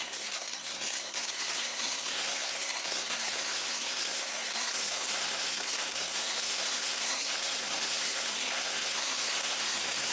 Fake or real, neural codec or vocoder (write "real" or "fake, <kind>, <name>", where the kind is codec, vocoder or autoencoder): fake, codec, SNAC